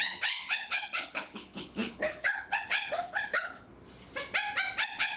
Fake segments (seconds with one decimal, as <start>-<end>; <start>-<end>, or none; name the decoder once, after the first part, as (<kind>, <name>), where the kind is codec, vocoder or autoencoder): 0.0-3.7 (codec, HILCodec); 4.8-5.2